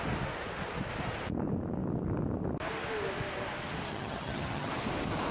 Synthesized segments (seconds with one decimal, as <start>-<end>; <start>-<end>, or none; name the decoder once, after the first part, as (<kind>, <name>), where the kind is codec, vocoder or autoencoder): 3.9-4.7 (vocoder, HiFi-GAN)